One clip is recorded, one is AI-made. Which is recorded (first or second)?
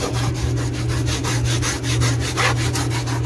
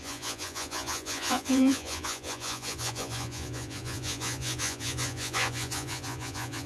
first